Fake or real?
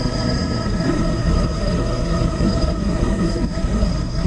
fake